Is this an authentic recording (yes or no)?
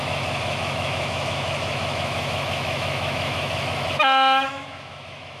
no